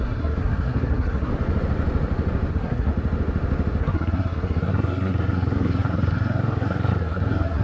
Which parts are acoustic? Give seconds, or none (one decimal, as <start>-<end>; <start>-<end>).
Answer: 1.3-2.5; 2.9-3.8